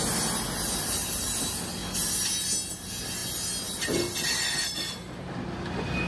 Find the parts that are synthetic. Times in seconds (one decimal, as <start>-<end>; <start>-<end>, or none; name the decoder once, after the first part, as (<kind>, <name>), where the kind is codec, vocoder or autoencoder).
none